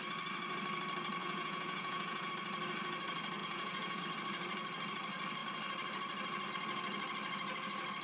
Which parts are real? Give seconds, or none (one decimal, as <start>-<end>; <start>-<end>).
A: 0.0-1.2; 2.3-3.4; 4.0-8.0